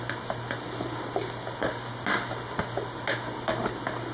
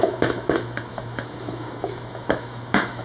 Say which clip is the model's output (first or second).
second